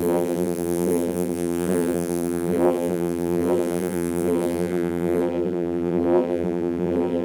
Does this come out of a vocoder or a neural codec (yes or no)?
yes